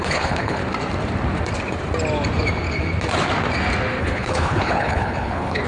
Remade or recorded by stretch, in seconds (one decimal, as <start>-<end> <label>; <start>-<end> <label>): 0.0-0.6 remade; 0.6-4.0 recorded; 4.0-5.7 remade